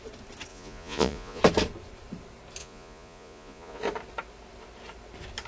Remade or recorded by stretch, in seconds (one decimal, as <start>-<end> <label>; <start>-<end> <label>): 0.0-0.5 recorded; 0.5-1.4 remade; 1.4-2.6 recorded; 2.6-3.8 remade; 3.8-5.5 recorded